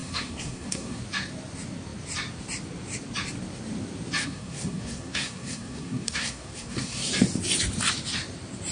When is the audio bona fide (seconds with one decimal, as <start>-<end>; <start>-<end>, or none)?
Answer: 1.0-4.2; 7.1-8.7